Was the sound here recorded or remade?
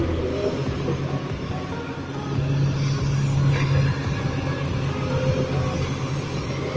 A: recorded